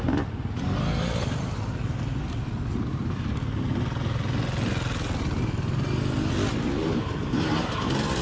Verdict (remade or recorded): recorded